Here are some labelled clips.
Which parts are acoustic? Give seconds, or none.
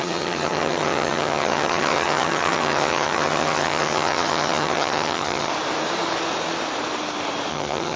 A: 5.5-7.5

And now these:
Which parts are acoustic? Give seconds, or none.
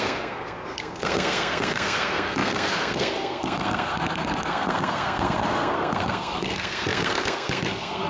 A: none